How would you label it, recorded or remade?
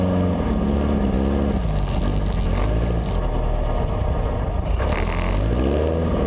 recorded